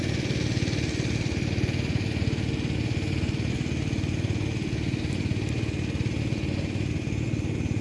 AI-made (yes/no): no